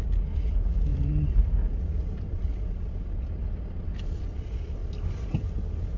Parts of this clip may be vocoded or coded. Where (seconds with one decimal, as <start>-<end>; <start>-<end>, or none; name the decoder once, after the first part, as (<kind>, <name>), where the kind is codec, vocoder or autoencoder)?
none